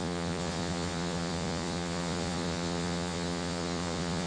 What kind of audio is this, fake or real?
fake